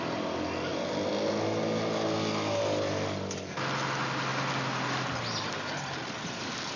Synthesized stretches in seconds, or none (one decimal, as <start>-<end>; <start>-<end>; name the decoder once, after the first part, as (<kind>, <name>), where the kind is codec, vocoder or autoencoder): none